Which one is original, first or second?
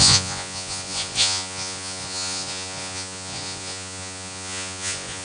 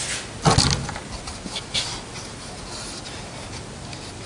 second